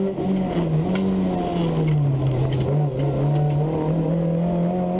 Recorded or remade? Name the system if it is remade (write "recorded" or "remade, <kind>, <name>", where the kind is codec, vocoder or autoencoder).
recorded